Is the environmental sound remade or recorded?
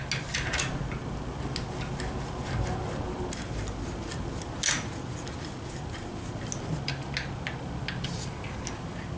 recorded